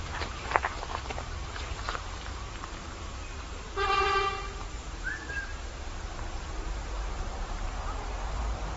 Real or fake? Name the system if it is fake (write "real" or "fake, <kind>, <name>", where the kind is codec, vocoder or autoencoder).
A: fake, vocoder, BigVGAN v2